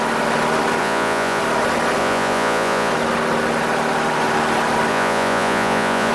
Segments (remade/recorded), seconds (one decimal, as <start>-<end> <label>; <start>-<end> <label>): 0.0-0.8 recorded; 0.8-1.4 remade; 1.4-2.0 recorded; 2.0-2.9 remade; 2.9-4.9 recorded; 4.9-6.1 remade